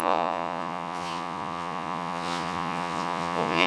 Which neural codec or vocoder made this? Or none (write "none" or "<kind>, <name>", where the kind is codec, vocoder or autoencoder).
vocoder, Vocos